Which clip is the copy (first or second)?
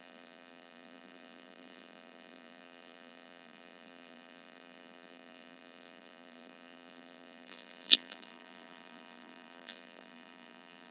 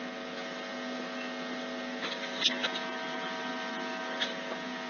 first